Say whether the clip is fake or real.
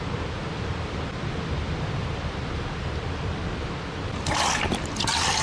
real